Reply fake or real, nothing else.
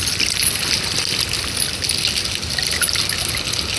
real